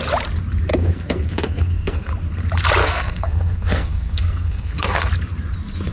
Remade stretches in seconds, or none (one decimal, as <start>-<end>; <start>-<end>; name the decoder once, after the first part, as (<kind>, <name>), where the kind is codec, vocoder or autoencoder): 0.7-2.1 (codec, SNAC); 2.8-5.1